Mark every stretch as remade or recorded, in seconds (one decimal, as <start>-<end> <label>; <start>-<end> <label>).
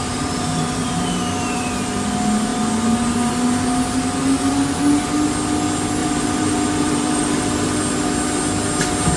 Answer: 0.0-1.6 remade; 1.6-6.0 recorded; 6.0-7.8 remade; 7.8-9.2 recorded